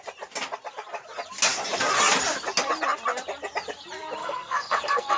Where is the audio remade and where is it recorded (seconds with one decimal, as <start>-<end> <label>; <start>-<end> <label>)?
0.0-4.2 recorded; 4.2-5.2 remade

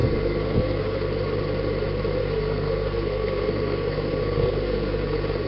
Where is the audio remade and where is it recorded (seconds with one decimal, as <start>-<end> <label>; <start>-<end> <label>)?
0.0-1.1 remade; 1.1-2.2 recorded; 2.2-5.5 remade

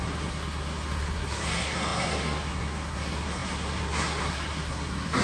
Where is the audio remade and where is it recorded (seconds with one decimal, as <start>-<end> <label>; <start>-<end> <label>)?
0.0-5.2 remade

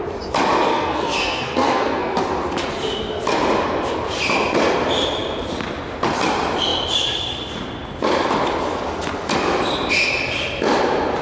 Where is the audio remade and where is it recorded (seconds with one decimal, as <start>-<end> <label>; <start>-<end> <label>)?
0.0-0.7 recorded; 0.7-2.2 remade; 2.2-11.2 recorded

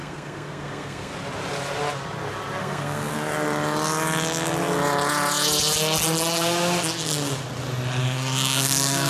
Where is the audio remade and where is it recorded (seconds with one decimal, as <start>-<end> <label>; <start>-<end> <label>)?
0.0-1.1 remade; 1.1-2.6 recorded; 2.6-3.1 remade; 3.1-8.0 recorded; 8.0-9.1 remade

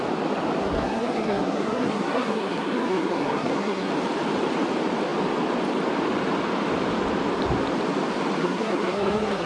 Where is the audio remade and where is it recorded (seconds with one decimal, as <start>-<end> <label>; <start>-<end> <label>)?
0.0-0.6 recorded; 0.6-3.9 remade; 3.9-8.4 recorded; 8.4-9.5 remade

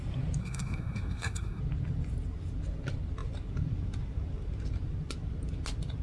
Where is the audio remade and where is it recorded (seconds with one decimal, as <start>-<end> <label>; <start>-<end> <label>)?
0.0-0.4 recorded; 0.4-1.6 remade; 1.6-6.0 recorded